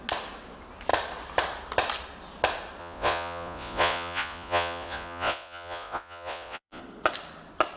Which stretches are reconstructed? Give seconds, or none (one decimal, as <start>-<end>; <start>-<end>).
2.8-6.8